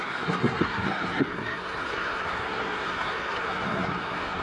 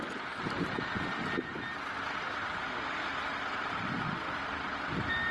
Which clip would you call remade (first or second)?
first